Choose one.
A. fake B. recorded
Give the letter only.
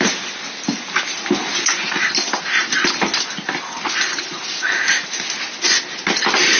B